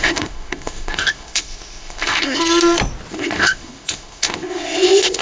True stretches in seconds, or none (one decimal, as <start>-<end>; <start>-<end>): 2.4-3.1